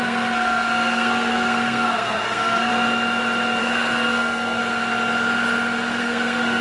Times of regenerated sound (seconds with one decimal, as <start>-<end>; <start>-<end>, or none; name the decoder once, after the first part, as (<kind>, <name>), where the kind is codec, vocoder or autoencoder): 0.0-2.7 (codec, SNAC); 3.6-4.6; 6.0-6.6